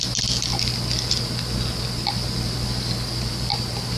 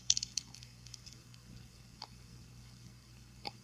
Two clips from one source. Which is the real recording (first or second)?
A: first